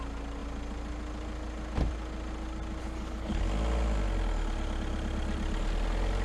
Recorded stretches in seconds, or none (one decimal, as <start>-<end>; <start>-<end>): 0.0-2.8; 3.4-6.2